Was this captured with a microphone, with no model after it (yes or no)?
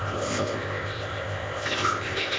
no